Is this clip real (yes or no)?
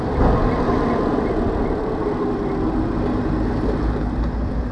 yes